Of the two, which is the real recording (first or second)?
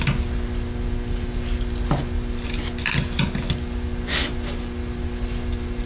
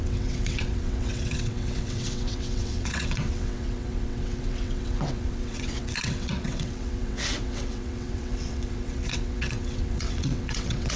first